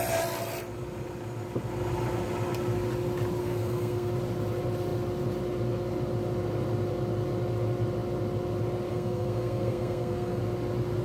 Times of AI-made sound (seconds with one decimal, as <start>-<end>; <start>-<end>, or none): 3.4-4.1; 8.9-10.4